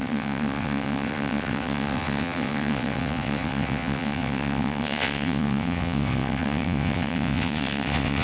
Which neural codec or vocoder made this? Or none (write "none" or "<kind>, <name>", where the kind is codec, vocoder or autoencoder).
vocoder, WaveNeXt